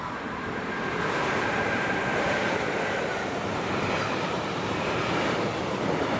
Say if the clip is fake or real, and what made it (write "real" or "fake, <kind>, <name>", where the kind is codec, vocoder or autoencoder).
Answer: fake, vocoder, BigVGAN v2